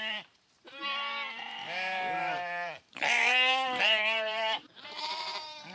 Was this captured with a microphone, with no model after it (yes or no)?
no